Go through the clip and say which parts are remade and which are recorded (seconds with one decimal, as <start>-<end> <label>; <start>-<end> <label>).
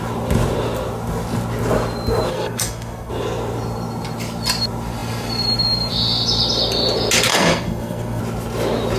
0.0-2.3 recorded; 2.3-3.1 remade; 3.1-7.3 recorded; 7.3-8.2 remade; 8.2-9.0 recorded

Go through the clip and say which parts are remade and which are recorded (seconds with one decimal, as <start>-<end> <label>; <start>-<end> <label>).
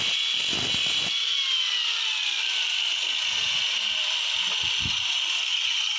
0.0-6.0 recorded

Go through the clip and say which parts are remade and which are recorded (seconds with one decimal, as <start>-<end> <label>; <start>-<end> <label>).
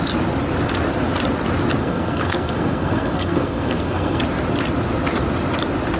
0.0-1.8 recorded; 1.8-4.2 remade; 4.2-6.0 recorded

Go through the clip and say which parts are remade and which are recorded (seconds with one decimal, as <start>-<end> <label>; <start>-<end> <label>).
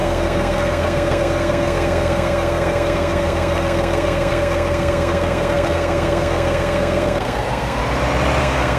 0.0-7.8 remade; 7.8-8.4 recorded; 8.4-8.8 remade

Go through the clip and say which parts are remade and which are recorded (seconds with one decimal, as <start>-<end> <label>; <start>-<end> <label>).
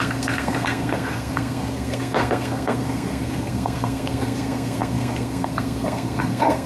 0.0-6.7 remade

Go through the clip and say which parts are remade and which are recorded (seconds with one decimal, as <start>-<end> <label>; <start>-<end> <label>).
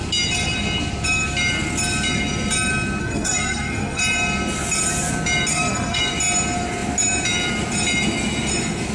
0.0-3.0 recorded; 3.0-4.0 remade; 4.0-5.5 recorded; 5.5-6.0 remade; 6.0-8.9 recorded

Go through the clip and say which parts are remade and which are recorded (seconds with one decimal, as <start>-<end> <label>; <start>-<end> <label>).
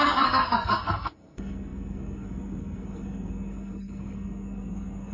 0.0-5.1 remade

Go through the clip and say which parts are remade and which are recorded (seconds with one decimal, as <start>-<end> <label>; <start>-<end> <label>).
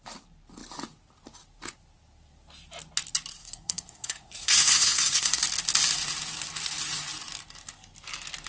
0.0-3.4 recorded; 3.4-5.4 remade; 5.4-8.5 recorded